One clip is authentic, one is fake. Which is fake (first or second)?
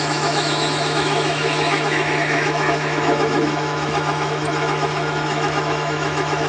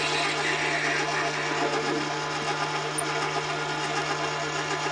first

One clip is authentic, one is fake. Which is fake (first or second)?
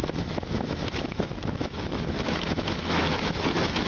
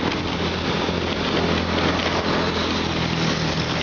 first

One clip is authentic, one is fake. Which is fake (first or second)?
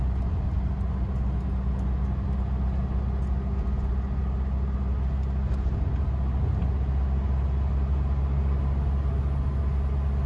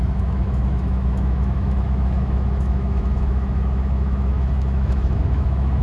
second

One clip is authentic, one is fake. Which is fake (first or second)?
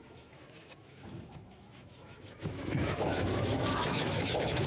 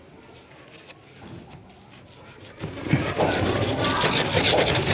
first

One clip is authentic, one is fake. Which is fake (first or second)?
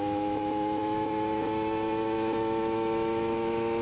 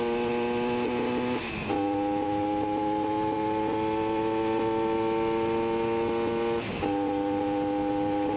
first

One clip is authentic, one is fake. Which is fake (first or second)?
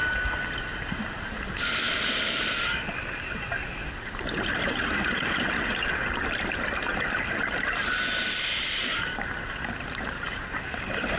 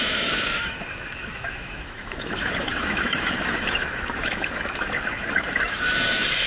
second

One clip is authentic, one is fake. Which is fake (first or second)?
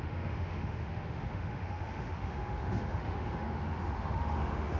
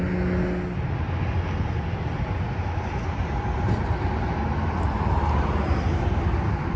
first